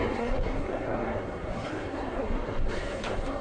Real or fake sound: fake